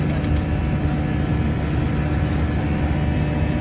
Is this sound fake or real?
real